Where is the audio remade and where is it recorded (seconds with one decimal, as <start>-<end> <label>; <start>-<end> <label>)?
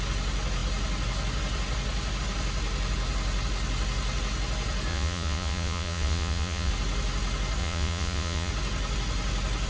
0.0-4.9 recorded; 4.9-6.7 remade; 6.7-7.6 recorded; 7.6-8.5 remade; 8.5-9.7 recorded